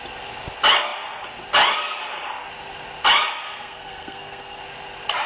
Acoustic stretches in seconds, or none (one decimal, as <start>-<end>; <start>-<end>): 0.0-3.4; 4.6-5.3